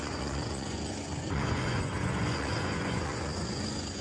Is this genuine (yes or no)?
no